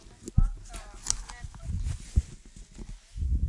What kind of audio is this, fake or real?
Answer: real